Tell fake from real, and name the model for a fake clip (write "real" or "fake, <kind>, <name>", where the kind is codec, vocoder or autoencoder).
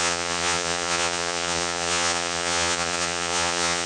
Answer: fake, vocoder, Vocos